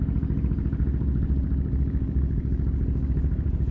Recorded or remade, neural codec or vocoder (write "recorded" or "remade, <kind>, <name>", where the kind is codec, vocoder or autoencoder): recorded